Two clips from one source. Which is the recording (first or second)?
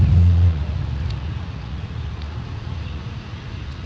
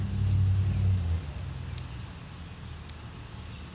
second